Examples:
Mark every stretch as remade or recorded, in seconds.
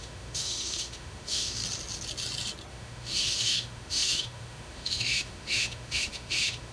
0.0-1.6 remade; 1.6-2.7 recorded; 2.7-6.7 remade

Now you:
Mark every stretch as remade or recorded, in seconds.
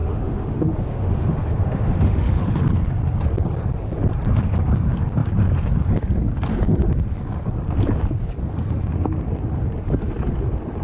0.0-2.6 remade; 2.6-10.8 recorded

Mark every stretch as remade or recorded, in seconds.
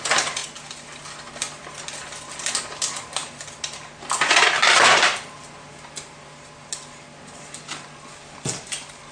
0.0-9.1 recorded